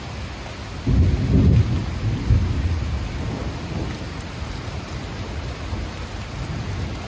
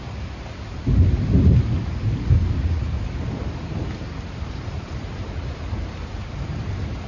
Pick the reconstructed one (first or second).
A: second